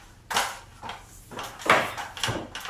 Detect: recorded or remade recorded